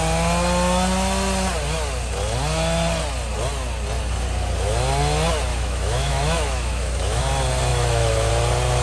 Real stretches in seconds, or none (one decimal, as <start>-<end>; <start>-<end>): 0.0-5.5; 7.2-7.7; 8.3-8.8